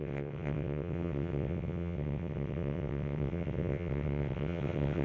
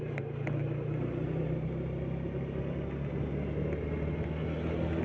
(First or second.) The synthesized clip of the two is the first